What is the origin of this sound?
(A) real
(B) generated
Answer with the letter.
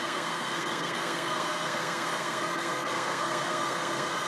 B